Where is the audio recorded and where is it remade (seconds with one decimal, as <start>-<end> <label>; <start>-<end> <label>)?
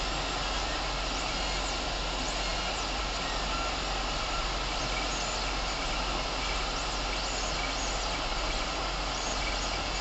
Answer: 0.0-10.0 recorded